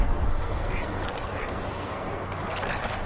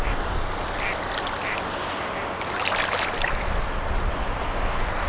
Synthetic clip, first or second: first